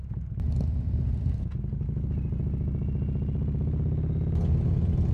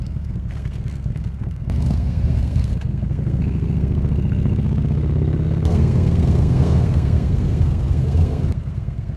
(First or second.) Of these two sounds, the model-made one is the second